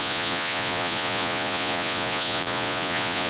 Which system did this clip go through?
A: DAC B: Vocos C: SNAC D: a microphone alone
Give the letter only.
B